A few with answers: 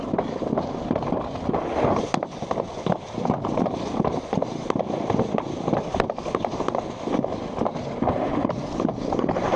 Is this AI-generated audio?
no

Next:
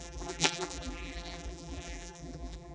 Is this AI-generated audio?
yes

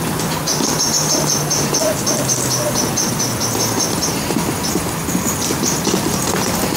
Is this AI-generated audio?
no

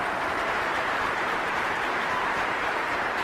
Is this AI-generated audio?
yes